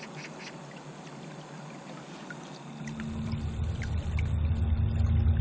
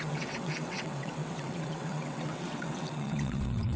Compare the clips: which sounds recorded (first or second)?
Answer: first